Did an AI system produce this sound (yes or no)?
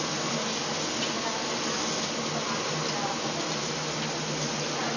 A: no